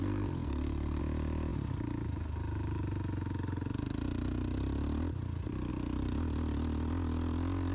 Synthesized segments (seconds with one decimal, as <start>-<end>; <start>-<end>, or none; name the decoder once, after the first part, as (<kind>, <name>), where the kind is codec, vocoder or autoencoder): 0.0-1.0 (codec, SNAC)